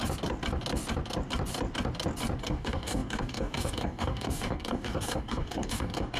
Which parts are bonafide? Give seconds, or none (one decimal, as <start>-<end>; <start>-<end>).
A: 0.0-2.4